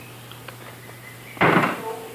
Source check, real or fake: real